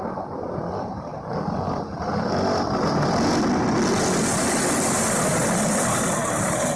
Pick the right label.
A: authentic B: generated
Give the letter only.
A